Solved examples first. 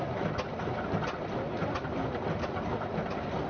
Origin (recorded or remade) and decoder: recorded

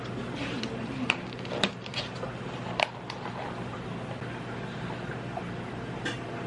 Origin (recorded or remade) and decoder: recorded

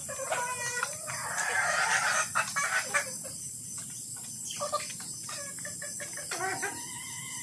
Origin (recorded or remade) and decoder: recorded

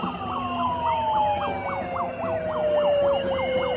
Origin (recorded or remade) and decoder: recorded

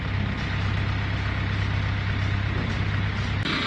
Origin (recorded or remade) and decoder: recorded